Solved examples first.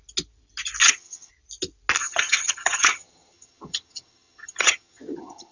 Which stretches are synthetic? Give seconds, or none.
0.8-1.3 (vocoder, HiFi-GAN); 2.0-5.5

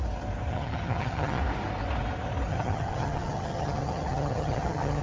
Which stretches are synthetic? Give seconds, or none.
0.5-1.4 (vocoder, HiFi-GAN); 2.5-5.0